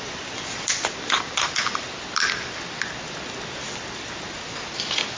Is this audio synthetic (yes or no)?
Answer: no